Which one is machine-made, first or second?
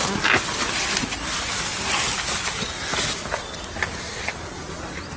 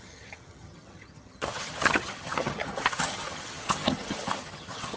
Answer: second